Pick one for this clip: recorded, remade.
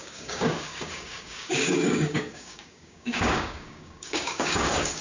remade